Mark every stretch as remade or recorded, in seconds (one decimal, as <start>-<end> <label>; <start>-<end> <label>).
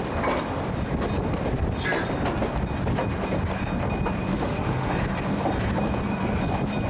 0.0-4.3 recorded; 4.3-4.9 remade; 4.9-6.9 recorded